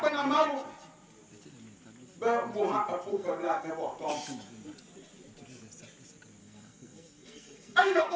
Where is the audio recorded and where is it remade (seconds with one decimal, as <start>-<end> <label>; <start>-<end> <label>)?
0.0-3.1 recorded; 3.1-3.7 remade; 3.7-6.4 recorded; 6.4-8.2 remade